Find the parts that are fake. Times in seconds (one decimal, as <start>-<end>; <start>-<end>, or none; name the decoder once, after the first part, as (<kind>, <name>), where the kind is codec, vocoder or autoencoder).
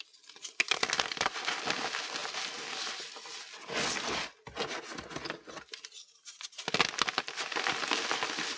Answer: none